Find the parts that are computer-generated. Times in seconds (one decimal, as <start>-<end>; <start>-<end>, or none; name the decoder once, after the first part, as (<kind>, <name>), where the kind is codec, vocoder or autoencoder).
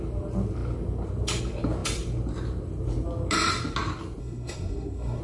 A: 4.2-5.2 (codec, SNAC)